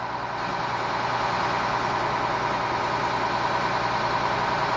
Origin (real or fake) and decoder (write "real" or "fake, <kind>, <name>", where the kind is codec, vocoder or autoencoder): real